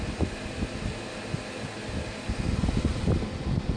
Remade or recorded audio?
recorded